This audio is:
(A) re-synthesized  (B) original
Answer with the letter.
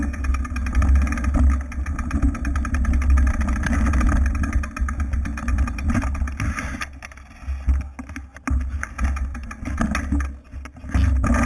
B